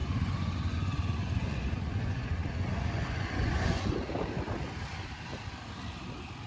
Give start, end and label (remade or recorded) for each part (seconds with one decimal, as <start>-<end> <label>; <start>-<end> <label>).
0.0-3.9 remade; 3.9-6.5 recorded